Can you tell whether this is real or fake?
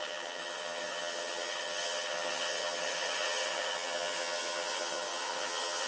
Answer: fake